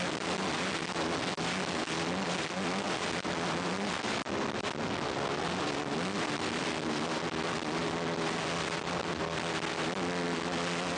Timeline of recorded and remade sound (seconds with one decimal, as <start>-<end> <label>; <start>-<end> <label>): 0.0-11.0 recorded